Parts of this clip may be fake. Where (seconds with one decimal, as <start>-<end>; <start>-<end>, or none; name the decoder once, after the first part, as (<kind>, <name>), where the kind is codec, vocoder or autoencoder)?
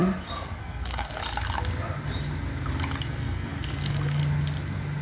0.6-1.1 (codec, SNAC); 3.1-4.2